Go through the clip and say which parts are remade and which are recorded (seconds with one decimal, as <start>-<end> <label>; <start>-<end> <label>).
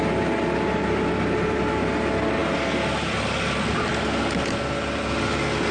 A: 0.0-5.7 recorded